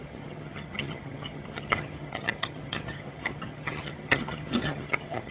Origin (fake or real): fake